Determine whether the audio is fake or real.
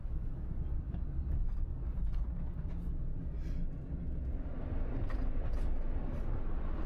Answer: real